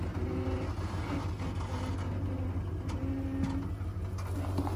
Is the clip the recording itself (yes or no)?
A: yes